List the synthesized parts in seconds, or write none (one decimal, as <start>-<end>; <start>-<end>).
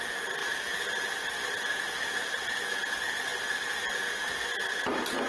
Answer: none